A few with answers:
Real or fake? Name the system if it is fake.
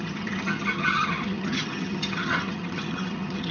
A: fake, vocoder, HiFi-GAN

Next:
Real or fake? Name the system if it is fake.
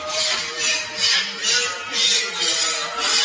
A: real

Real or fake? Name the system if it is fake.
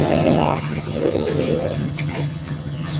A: fake, vocoder, HiFi-GAN